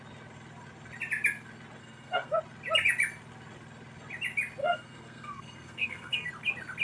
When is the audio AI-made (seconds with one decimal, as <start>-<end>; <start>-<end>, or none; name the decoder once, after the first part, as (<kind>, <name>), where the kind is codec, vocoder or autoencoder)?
1.8-2.4 (codec, SNAC); 4.6-6.3